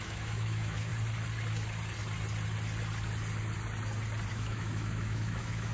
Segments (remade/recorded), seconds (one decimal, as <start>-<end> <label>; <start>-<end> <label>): 0.0-0.9 remade; 0.9-4.3 recorded; 4.3-5.7 remade

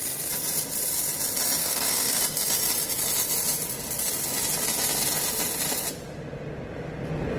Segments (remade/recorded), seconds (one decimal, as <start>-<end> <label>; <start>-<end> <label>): 0.0-1.6 recorded; 1.6-2.2 remade; 2.2-7.4 recorded

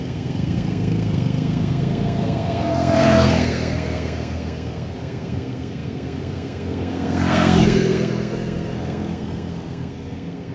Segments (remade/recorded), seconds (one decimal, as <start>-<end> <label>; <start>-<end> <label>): 0.0-10.5 remade

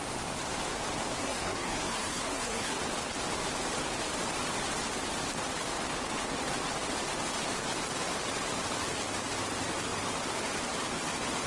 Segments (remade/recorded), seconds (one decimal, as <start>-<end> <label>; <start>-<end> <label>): 0.0-1.2 recorded; 1.2-2.8 remade; 2.8-11.5 recorded

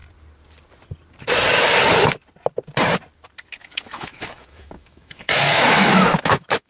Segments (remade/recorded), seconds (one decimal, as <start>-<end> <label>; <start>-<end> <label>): 0.0-3.6 recorded; 3.6-6.7 remade

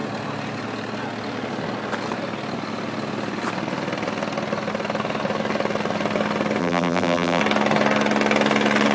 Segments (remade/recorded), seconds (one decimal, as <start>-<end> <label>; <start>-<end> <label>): 0.0-6.6 recorded; 6.6-7.4 remade; 7.4-8.9 recorded

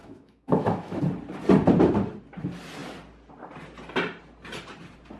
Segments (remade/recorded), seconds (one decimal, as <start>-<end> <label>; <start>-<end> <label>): 0.0-1.0 remade; 1.0-5.2 recorded

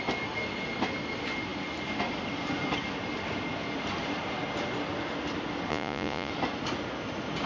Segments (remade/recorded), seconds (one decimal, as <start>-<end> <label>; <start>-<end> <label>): 0.0-5.7 recorded; 5.7-6.3 remade; 6.3-7.5 recorded